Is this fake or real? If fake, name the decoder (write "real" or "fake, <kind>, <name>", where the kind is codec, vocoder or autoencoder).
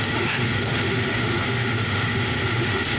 fake, autoencoder, DAC-VAE